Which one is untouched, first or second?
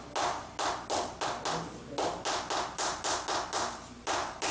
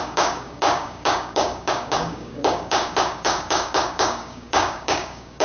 first